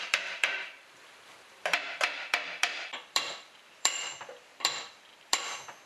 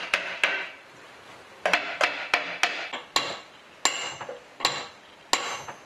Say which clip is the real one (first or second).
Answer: second